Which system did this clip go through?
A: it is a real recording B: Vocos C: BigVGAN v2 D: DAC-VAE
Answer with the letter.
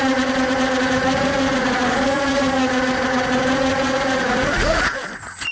B